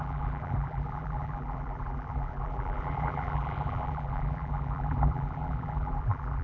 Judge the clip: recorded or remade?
remade